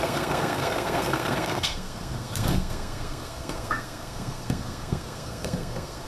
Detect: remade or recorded remade